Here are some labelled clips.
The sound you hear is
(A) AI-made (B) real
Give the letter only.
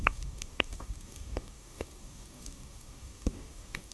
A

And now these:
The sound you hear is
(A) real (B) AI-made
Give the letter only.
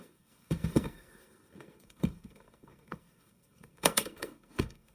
B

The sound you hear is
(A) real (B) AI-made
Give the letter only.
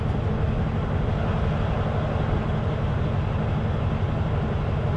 A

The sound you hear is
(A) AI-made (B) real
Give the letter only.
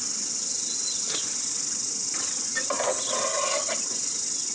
A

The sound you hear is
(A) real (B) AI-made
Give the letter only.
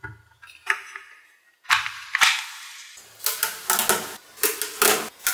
A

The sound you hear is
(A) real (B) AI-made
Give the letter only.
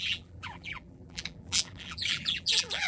B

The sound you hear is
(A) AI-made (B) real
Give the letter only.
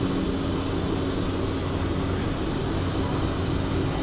B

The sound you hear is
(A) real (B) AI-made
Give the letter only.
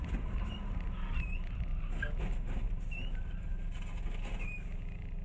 A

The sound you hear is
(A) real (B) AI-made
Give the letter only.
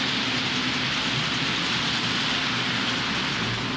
A